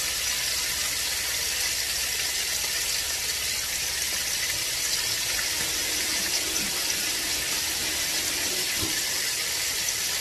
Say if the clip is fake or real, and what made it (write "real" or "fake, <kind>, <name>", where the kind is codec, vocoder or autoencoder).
real